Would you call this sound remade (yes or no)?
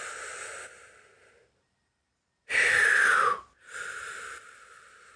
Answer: no